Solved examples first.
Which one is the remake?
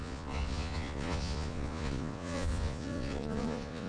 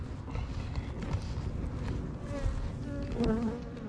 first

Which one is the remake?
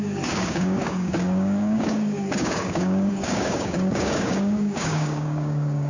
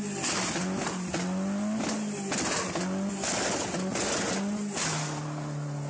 first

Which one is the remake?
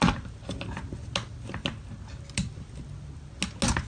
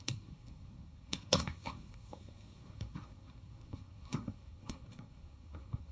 second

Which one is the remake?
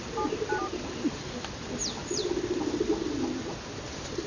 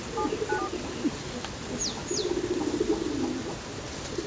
first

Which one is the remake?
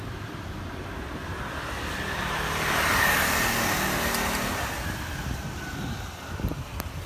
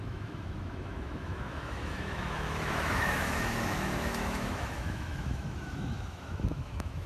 second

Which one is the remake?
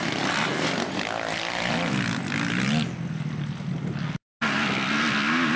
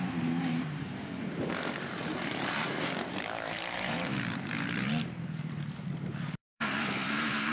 second